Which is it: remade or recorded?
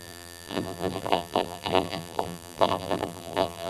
remade